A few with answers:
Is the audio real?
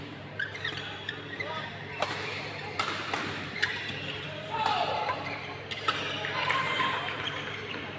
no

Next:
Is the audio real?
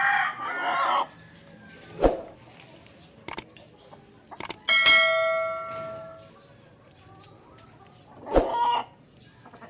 yes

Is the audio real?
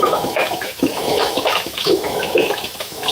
no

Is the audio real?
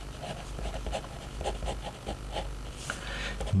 no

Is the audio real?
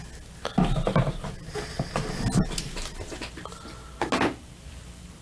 yes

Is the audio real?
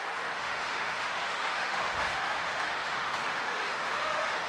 no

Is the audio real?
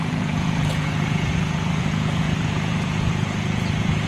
no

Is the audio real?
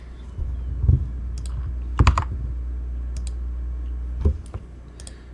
yes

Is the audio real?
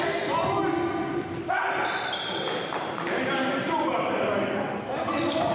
yes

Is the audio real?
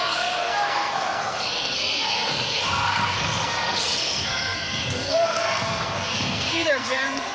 no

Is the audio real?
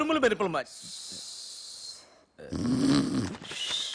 yes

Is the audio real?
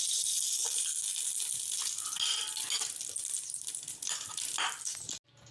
yes